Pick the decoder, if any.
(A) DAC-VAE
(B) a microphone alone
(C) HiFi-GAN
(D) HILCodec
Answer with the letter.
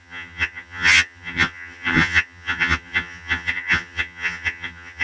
C